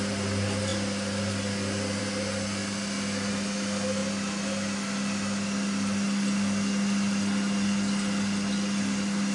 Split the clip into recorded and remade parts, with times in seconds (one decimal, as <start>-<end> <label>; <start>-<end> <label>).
0.0-9.3 recorded